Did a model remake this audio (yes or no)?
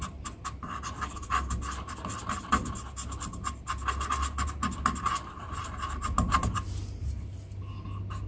no